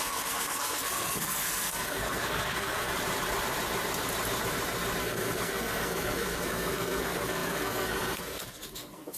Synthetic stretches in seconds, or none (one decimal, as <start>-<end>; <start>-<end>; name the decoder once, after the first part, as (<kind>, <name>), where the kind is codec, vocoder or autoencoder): 0.0-2.9 (codec, SNAC); 5.0-9.2